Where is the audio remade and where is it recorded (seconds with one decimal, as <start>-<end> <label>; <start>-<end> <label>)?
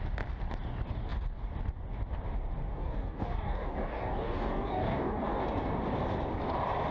0.0-2.7 recorded; 2.7-5.4 remade; 5.4-6.9 recorded